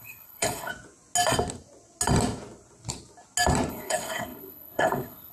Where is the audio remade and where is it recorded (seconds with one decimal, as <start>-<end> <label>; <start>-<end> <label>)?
0.0-0.7 remade; 0.7-3.7 recorded; 3.7-5.3 remade